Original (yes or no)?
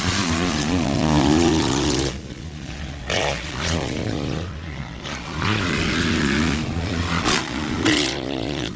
no